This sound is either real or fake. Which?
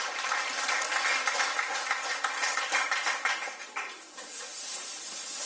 real